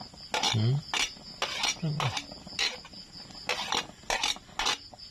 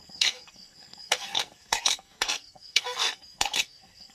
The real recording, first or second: first